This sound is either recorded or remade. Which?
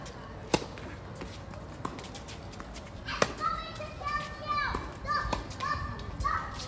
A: recorded